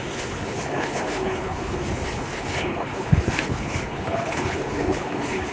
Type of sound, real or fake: fake